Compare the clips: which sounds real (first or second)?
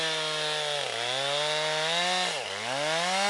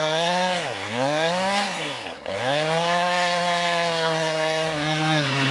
first